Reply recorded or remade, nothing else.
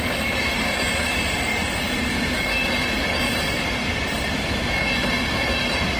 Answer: recorded